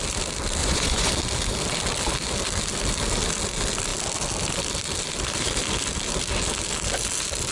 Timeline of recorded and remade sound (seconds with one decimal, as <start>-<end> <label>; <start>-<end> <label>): 0.0-0.6 recorded; 0.6-1.1 remade; 1.1-7.5 recorded